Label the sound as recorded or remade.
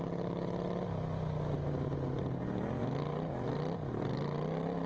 recorded